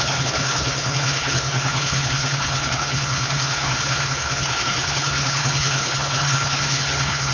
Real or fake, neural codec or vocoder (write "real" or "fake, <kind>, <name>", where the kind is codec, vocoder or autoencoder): fake, codec, HILCodec